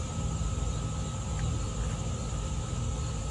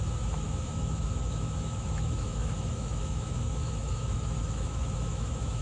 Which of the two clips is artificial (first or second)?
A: second